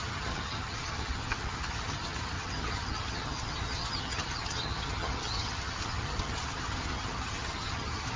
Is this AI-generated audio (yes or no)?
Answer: yes